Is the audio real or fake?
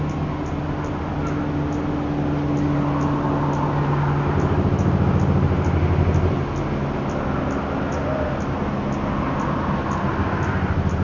real